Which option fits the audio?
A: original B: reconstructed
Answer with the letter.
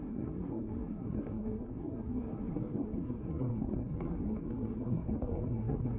B